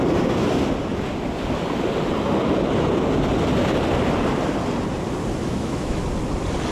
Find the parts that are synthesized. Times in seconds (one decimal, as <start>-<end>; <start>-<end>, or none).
5.4-6.0